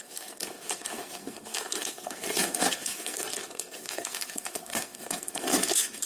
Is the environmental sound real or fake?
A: fake